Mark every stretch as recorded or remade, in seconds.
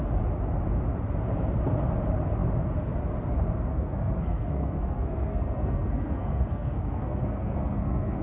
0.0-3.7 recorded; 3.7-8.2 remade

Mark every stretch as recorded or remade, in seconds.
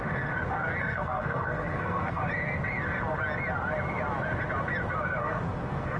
0.0-0.8 recorded; 0.8-2.2 remade; 2.2-5.2 recorded; 5.2-6.0 remade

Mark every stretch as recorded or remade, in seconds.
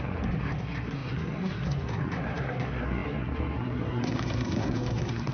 0.0-5.3 remade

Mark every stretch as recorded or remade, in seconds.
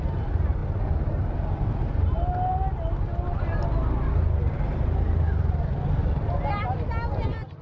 0.0-7.6 recorded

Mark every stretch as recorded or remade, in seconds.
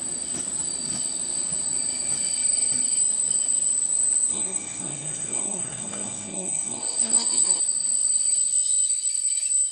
0.0-4.3 recorded; 4.3-7.6 remade; 7.6-9.7 recorded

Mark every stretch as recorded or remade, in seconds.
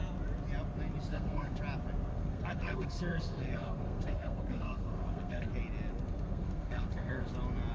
0.0-1.1 recorded; 1.1-1.6 remade; 1.6-2.1 recorded; 2.1-5.5 remade; 5.5-5.9 recorded; 5.9-7.3 remade; 7.3-7.7 recorded